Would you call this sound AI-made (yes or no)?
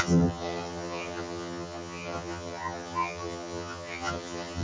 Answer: yes